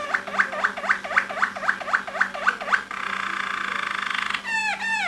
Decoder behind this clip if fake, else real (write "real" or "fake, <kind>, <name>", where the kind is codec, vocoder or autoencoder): real